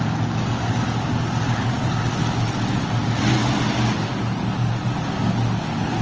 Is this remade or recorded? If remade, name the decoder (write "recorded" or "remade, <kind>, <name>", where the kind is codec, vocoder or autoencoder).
recorded